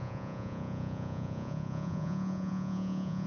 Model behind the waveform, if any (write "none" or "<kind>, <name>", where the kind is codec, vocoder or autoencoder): vocoder, Vocos